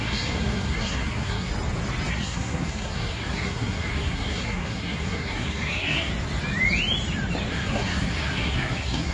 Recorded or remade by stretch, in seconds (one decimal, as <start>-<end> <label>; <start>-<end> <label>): 0.0-1.5 remade; 1.5-2.1 recorded; 2.1-6.1 remade; 6.1-7.5 recorded; 7.5-9.1 remade